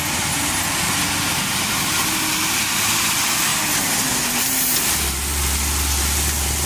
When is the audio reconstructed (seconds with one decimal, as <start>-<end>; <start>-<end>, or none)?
none